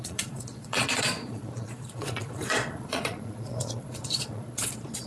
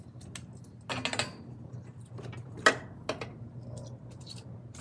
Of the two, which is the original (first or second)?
second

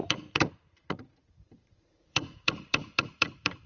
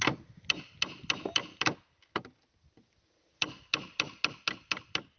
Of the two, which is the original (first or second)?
second